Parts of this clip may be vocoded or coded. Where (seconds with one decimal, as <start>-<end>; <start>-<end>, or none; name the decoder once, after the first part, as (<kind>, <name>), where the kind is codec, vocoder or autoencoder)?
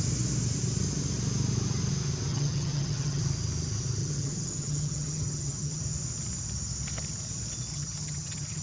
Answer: 2.3-3.2 (vocoder, HiFi-GAN); 4.0-5.8; 7.7-8.6